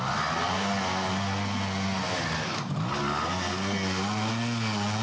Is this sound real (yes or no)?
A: yes